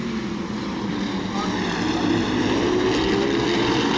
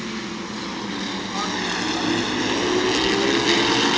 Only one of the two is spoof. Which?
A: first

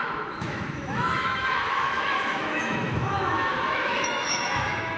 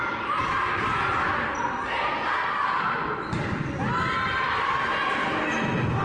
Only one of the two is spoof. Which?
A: first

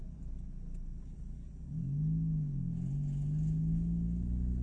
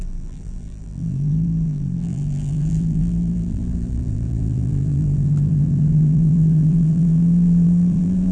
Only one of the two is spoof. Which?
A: second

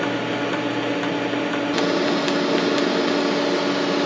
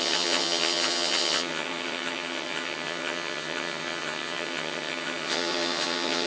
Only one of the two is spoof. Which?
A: second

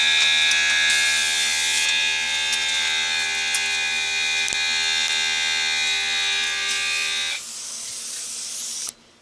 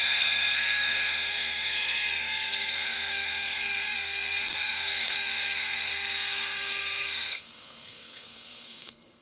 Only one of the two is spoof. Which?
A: second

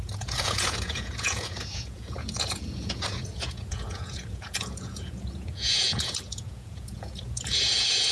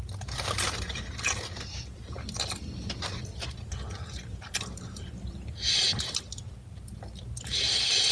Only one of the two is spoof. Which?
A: first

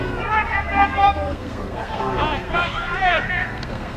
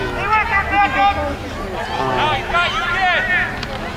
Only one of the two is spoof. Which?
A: first